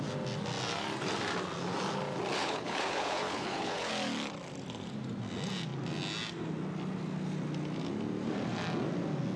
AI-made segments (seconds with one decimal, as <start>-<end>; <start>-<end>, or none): 2.4-3.9